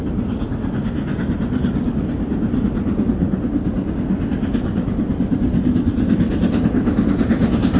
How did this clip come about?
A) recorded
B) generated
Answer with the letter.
A